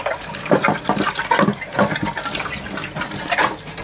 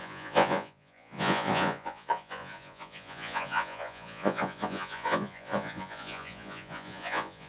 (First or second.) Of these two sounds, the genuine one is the first